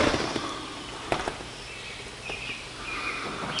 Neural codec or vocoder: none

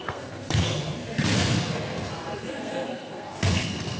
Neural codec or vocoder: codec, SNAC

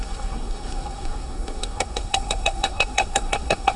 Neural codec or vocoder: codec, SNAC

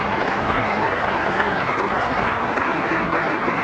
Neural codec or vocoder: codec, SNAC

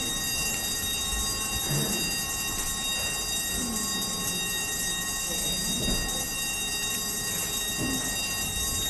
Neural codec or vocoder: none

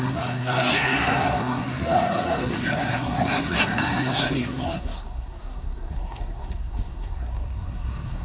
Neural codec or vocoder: codec, SNAC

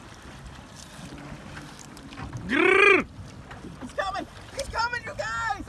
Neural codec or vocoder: none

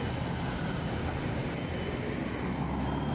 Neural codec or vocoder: none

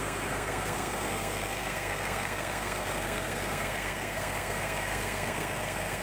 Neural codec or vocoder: codec, SNAC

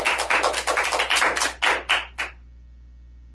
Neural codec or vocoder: none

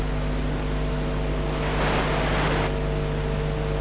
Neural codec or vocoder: none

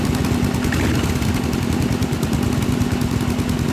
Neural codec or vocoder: none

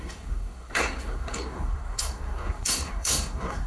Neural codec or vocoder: codec, SNAC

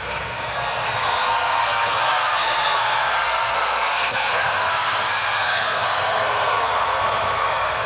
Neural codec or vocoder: codec, SNAC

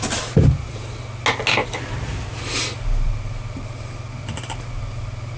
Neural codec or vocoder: none